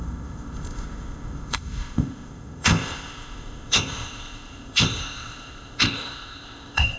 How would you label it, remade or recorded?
remade